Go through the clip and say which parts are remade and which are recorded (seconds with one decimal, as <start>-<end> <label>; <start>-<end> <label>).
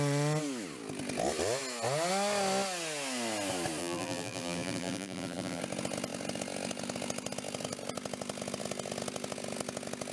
0.0-3.8 recorded; 3.8-5.6 remade; 5.6-10.1 recorded